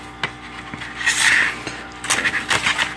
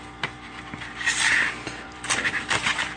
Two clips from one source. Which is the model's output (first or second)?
second